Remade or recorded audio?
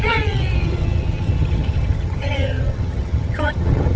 remade